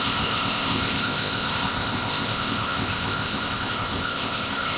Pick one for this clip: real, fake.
fake